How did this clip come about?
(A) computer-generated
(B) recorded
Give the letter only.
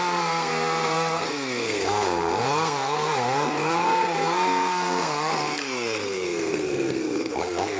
A